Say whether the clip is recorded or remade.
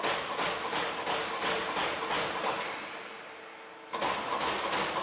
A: recorded